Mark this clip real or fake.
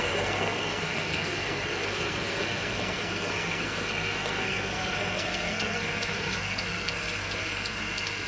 fake